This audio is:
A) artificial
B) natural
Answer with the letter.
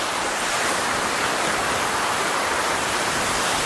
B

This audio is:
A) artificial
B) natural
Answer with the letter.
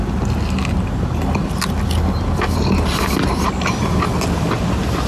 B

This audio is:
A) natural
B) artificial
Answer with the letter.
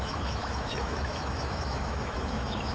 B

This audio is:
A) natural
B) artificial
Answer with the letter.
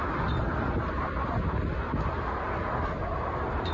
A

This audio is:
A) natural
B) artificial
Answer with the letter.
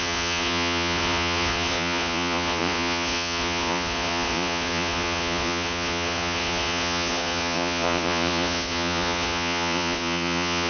B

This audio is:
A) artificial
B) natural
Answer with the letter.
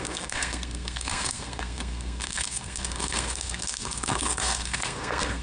A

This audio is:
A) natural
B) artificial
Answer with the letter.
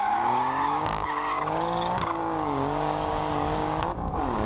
B